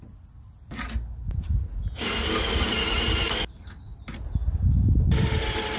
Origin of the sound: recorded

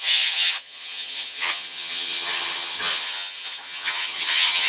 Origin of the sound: remade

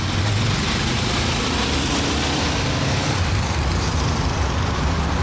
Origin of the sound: recorded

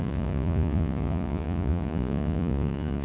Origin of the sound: remade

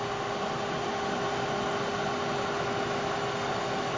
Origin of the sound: recorded